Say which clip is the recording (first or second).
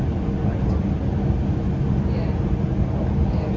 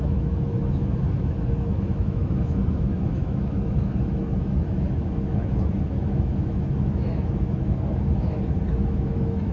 first